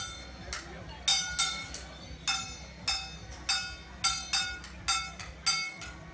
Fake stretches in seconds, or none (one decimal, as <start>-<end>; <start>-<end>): none